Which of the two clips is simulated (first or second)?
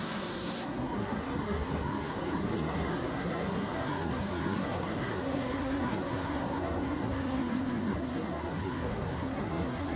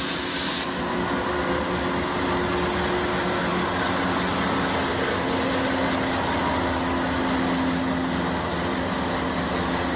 first